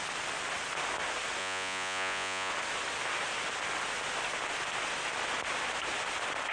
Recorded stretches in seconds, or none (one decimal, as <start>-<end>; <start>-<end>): 0.0-1.4; 2.5-6.5